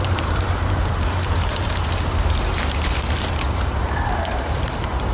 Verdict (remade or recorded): remade